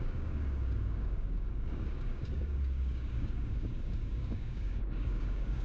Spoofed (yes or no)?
yes